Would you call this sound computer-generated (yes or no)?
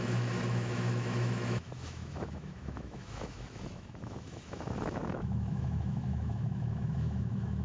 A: yes